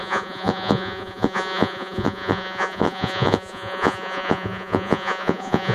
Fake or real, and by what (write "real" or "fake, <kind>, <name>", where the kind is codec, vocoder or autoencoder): fake, vocoder, Vocos